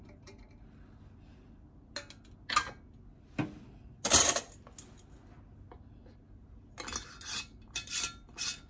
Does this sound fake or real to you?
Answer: real